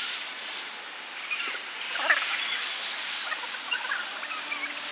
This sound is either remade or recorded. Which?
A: recorded